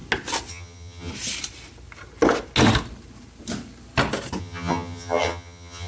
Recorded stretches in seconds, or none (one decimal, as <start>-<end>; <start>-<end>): 0.0-0.5; 1.1-4.4